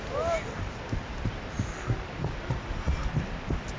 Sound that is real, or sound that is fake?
real